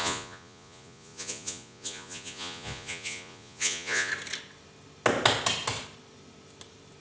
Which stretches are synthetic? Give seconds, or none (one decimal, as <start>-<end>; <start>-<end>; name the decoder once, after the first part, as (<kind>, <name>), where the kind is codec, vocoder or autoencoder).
0.0-4.1 (vocoder, Vocos)